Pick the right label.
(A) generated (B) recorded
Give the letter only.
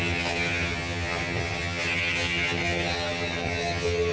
A